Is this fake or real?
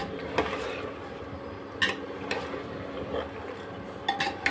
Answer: real